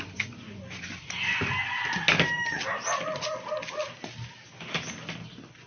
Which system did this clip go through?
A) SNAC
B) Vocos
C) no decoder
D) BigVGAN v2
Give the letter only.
C